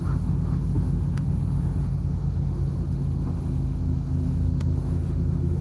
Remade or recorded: remade